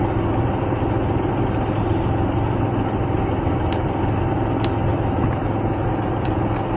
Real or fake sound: real